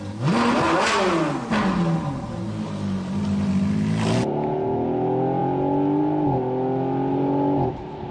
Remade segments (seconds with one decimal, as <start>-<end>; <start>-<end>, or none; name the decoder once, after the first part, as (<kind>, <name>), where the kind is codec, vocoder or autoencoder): none